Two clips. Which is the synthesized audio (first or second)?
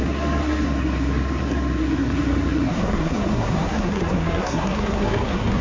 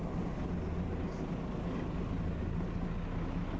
first